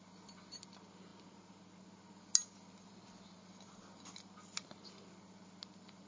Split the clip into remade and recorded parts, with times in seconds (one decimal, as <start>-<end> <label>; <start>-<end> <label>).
0.0-6.1 recorded